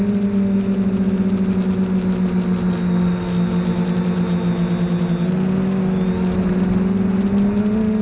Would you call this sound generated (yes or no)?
no